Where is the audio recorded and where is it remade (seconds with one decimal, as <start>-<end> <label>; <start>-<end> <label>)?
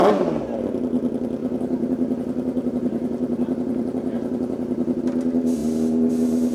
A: 0.0-1.4 recorded; 1.4-5.0 remade; 5.0-6.5 recorded